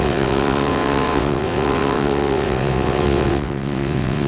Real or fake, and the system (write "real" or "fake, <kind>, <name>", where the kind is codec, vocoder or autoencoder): fake, vocoder, WaveNeXt